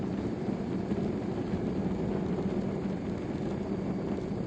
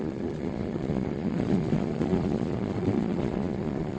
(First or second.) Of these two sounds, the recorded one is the first